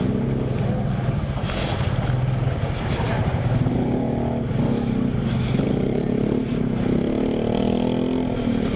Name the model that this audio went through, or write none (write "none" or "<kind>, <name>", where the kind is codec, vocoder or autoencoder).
none